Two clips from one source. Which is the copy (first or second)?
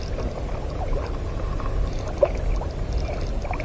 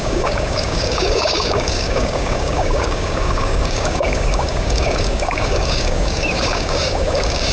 second